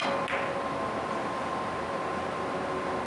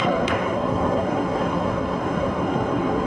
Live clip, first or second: first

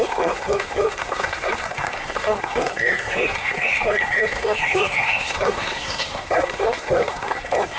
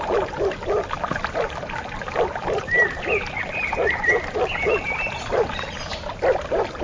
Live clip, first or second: second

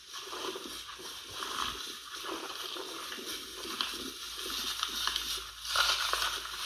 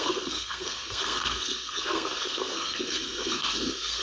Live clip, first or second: first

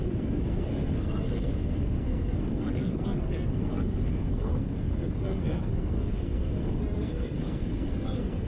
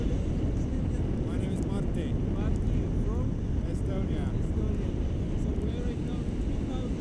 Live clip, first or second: second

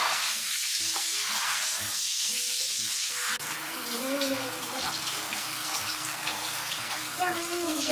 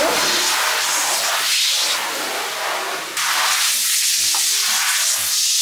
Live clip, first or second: second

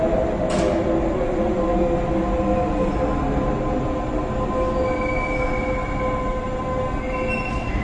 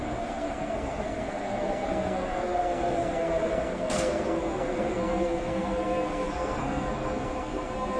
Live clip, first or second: first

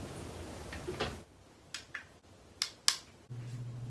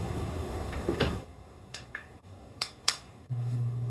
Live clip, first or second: first